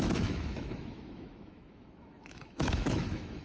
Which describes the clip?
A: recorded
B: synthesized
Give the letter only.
B